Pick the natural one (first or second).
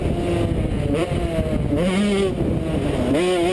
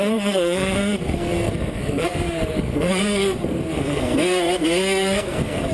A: first